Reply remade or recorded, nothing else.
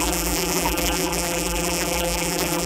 remade